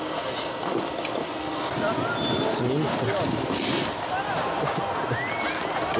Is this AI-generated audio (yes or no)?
no